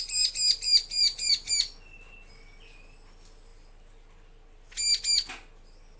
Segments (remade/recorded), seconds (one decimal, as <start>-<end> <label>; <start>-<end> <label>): 0.0-6.0 recorded